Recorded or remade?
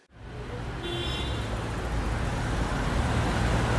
recorded